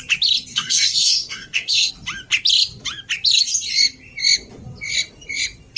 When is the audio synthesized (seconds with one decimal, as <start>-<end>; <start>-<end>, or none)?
0.5-1.9